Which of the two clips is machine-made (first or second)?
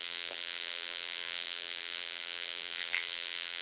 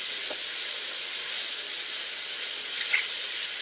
first